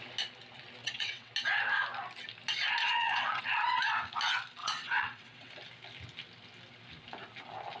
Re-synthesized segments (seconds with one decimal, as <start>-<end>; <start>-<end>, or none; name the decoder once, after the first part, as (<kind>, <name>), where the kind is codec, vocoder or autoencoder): 0.8-1.3 (vocoder, WaveNeXt); 2.8-3.4; 4.6-5.5